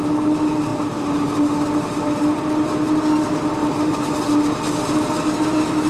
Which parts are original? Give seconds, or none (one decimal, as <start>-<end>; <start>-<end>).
0.0-3.6; 4.1-5.9